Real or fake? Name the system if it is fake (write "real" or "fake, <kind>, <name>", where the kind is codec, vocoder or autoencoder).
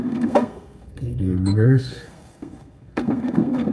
fake, codec, SNAC